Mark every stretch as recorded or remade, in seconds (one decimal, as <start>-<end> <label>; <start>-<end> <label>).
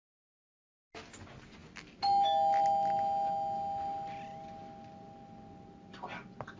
0.0-6.6 recorded